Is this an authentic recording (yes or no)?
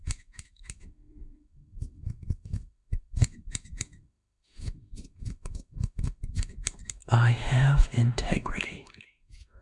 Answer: no